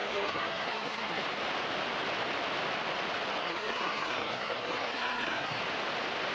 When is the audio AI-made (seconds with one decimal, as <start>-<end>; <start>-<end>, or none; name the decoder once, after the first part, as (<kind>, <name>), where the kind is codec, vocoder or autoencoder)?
0.0-1.2 (codec, SNAC); 3.4-5.6